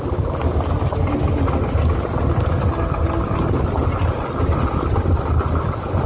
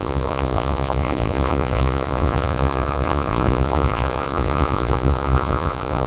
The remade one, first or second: second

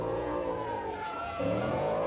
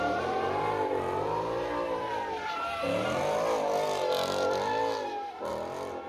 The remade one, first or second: first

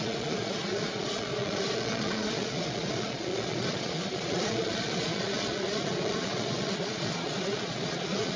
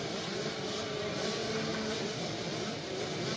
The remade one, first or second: first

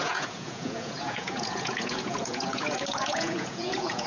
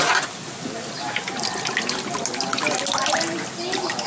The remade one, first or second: first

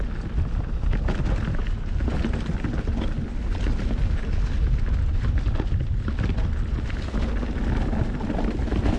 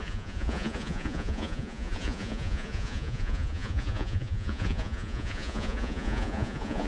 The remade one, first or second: second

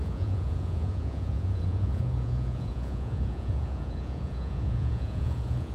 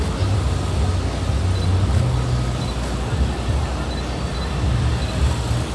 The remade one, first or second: first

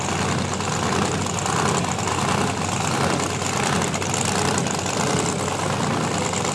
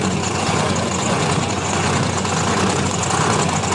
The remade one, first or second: second